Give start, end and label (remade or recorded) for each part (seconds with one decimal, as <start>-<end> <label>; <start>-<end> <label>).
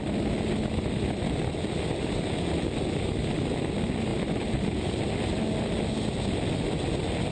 0.0-4.1 recorded; 4.1-5.1 remade; 5.1-7.3 recorded